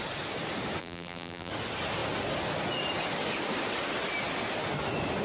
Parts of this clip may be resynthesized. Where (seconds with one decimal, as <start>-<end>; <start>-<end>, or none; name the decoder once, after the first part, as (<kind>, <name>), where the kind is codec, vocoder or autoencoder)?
0.8-1.5 (vocoder, BigVGAN v2)